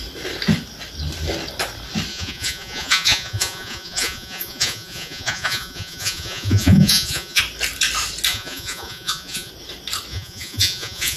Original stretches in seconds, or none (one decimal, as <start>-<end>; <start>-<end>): 0.0-2.1; 7.4-8.3; 9.5-10.1